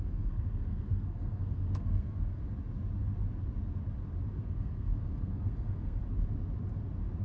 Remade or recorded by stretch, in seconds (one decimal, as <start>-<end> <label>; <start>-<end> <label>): 0.0-2.4 remade; 2.4-4.4 recorded; 4.4-6.0 remade; 6.0-7.2 recorded